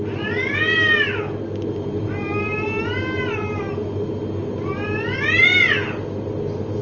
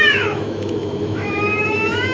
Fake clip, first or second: second